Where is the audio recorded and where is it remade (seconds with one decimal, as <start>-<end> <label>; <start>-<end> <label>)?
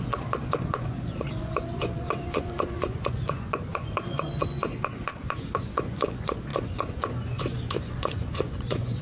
0.0-9.0 remade